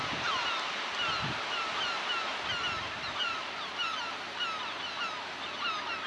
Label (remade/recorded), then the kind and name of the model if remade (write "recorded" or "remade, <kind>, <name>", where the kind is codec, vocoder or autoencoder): recorded